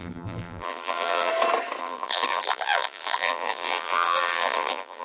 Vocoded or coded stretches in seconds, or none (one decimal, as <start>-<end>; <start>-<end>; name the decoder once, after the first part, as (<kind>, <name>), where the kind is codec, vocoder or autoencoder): 0.0-1.3 (vocoder, BigVGAN v2); 1.8-5.0